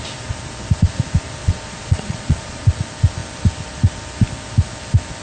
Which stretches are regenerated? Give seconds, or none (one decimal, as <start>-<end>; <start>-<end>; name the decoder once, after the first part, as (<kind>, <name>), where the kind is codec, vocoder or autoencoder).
1.4-2.6 (vocoder, Vocos)